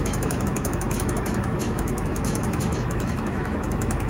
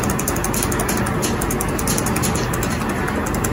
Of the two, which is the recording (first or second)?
second